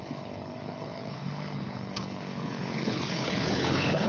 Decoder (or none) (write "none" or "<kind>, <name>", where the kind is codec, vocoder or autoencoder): codec, HILCodec